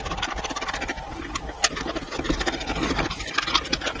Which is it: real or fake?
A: real